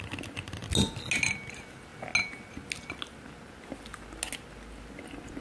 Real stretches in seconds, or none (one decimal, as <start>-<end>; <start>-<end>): 0.0-5.4